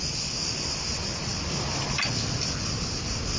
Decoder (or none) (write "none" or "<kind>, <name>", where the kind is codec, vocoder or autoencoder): none